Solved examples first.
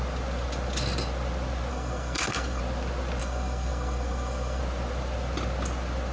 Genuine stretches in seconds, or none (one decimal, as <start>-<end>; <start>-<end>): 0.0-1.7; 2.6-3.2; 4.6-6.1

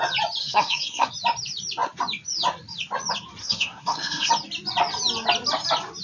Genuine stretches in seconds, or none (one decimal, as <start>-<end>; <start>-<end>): 0.0-0.4; 1.1-3.4; 4.3-6.0

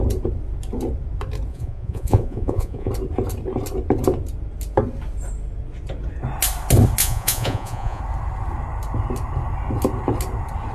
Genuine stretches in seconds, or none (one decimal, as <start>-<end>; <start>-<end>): 0.0-1.5; 2.9-7.0; 8.0-10.7

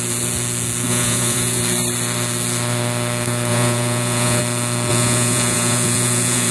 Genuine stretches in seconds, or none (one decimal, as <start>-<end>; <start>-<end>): 0.0-0.9; 1.6-3.5; 4.4-4.9

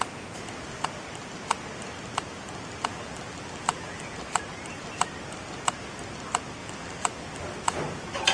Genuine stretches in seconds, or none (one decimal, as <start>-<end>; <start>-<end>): 0.0-2.9; 4.4-6.6; 7.4-8.3

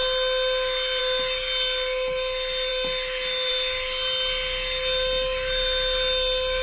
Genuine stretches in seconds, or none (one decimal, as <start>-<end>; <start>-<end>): 0.0-6.6